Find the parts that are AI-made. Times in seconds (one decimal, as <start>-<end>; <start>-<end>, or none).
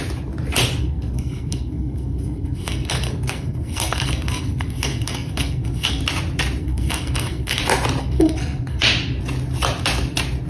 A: 0.8-6.0; 6.6-7.6; 8.0-8.8